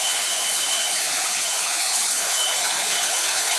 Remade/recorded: remade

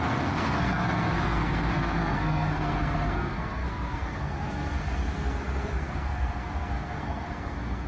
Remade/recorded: remade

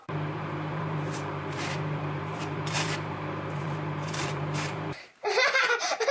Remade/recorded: remade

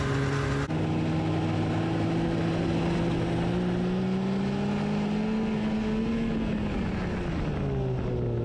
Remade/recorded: recorded